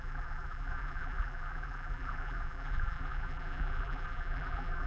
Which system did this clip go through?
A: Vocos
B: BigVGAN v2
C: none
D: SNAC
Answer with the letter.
B